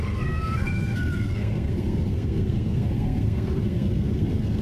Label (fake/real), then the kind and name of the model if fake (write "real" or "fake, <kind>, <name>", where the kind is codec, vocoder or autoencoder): fake, codec, SNAC